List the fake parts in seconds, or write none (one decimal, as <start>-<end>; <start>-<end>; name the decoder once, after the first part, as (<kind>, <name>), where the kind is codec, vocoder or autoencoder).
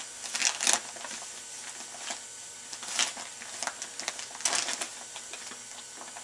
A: none